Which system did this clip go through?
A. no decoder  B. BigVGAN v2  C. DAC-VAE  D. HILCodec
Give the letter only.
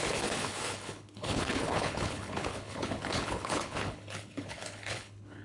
D